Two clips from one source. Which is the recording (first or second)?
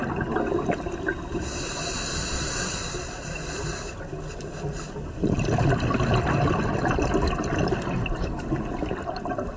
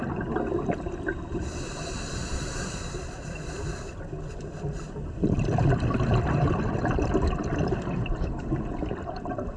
first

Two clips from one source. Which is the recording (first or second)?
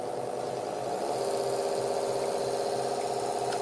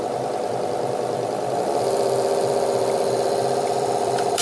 first